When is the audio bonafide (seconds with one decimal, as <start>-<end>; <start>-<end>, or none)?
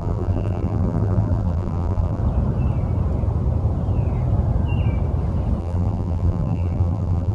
2.2-5.6